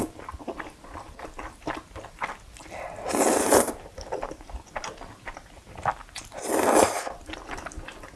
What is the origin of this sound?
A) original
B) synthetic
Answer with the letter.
A